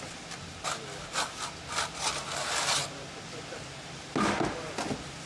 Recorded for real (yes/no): yes